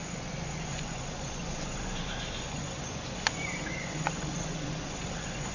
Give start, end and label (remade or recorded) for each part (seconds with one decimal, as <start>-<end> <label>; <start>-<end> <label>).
0.0-5.5 remade